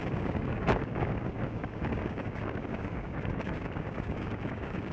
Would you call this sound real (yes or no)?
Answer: no